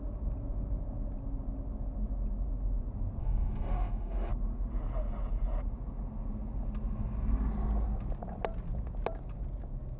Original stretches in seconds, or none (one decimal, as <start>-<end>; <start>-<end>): 0.0-3.2; 4.3-10.0